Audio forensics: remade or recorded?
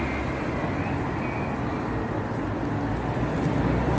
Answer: recorded